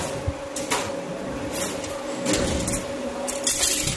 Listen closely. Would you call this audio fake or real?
real